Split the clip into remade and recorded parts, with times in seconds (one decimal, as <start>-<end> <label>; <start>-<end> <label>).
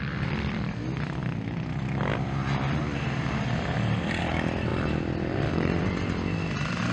0.0-1.2 remade; 1.2-4.2 recorded; 4.2-6.9 remade